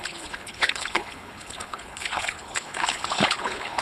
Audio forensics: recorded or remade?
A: remade